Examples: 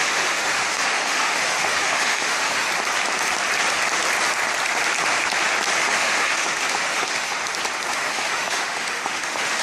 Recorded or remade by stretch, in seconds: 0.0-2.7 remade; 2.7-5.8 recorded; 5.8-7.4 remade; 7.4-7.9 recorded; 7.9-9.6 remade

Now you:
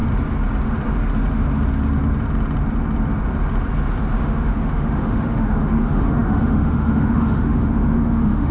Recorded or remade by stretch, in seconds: 0.0-4.2 recorded; 4.2-8.5 remade

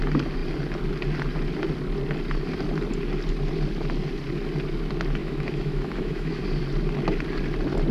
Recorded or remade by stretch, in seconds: 0.0-5.2 recorded; 5.2-6.4 remade; 6.4-7.9 recorded

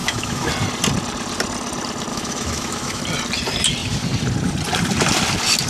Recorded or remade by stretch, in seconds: 0.0-0.5 remade; 0.5-2.1 recorded; 2.1-3.0 remade; 3.0-5.7 recorded